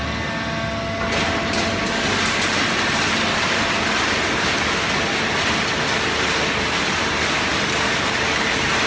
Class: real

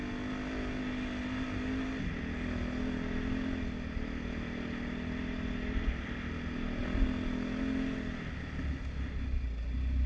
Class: real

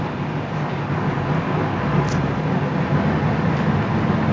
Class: real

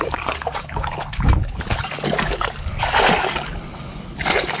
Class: fake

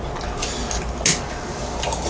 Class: real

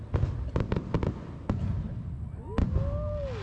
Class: real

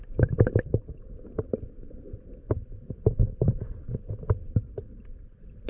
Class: fake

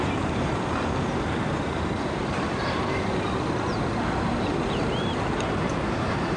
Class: fake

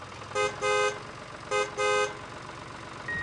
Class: real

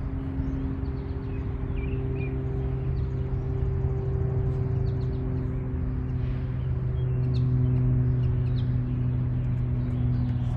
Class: real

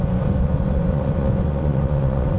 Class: fake